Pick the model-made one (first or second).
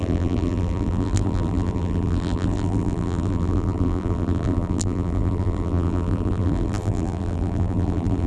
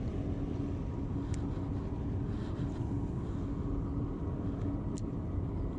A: first